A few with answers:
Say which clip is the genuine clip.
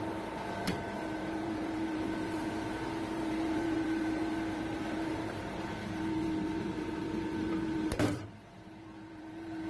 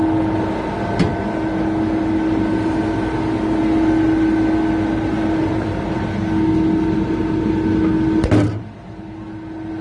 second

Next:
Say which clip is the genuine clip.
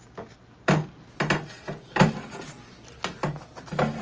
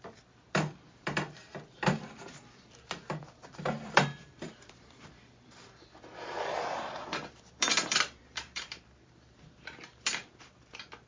first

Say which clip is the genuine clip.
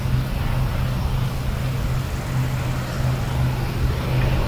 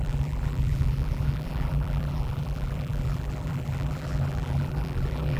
first